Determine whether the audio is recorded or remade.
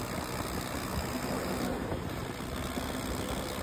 recorded